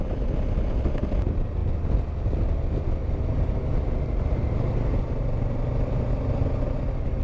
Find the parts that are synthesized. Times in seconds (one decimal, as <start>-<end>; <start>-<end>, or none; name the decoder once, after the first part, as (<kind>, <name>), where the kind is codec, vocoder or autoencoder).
none